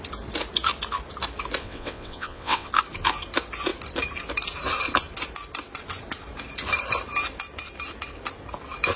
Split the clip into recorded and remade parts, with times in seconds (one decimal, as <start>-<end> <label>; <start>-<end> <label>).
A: 0.0-1.6 recorded; 1.6-2.7 remade; 2.7-9.0 recorded